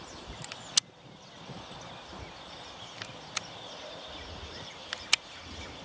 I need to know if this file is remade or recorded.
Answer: recorded